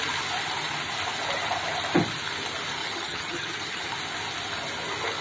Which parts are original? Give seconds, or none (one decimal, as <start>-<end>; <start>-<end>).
0.0-2.8; 3.9-5.2